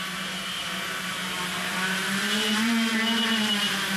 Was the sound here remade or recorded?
remade